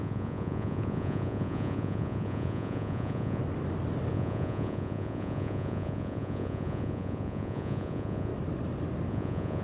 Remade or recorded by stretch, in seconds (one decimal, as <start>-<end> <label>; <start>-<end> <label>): 0.0-3.4 remade; 3.4-4.1 recorded; 4.1-8.3 remade; 8.3-9.1 recorded; 9.1-9.6 remade